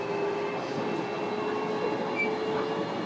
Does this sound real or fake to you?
real